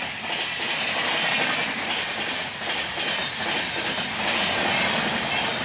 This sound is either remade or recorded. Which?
recorded